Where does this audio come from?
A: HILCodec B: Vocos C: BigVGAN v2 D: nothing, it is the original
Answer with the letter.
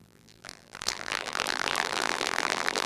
C